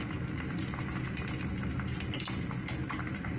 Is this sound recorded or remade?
recorded